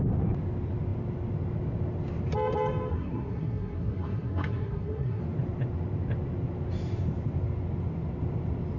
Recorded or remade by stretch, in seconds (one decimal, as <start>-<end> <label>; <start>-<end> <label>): 0.0-2.9 recorded; 2.9-5.2 remade; 5.2-8.8 recorded